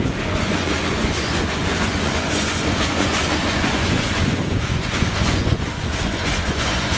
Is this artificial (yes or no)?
yes